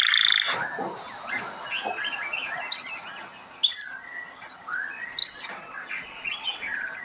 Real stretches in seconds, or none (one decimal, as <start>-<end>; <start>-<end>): 0.0-7.0